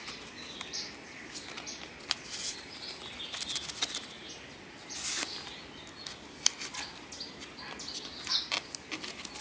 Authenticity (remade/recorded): recorded